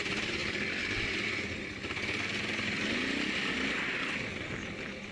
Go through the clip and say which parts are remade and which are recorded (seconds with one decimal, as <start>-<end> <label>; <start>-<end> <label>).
0.0-5.1 recorded